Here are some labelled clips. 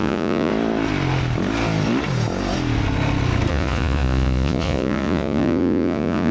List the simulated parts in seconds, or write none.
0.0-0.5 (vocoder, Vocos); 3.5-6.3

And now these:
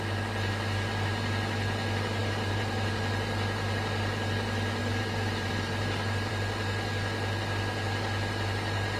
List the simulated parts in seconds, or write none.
2.2-3.0 (vocoder, BigVGAN v2); 4.8-6.3

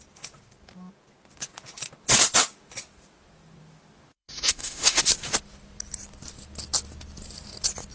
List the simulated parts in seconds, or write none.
4.1-5.0 (autoencoder, DAC-VAE)

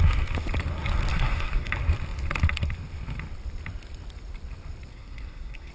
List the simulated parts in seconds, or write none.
1.1-1.7 (codec, SNAC); 4.9-5.7

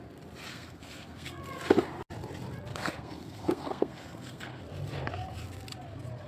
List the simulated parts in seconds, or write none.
0.5-1.4 (codec, SNAC); 2.7-4.6